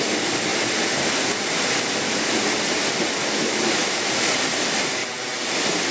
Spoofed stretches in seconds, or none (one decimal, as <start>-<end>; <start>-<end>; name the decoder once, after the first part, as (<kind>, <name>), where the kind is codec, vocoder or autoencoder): 3.2-4.1 (autoencoder, DAC-VAE)